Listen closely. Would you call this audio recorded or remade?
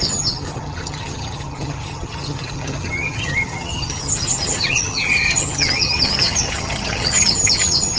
remade